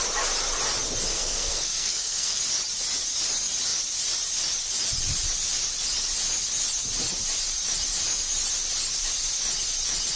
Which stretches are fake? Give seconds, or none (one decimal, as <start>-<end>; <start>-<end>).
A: 1.1-2.4